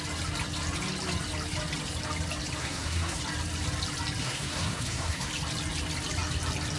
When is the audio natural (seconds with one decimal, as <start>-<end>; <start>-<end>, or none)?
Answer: 0.0-2.6; 3.2-4.2; 5.3-6.8